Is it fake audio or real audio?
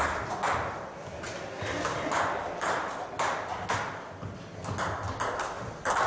real